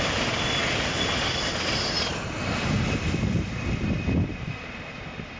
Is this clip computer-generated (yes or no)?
no